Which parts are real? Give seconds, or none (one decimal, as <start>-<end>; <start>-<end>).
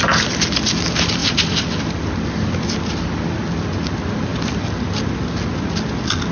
0.0-6.3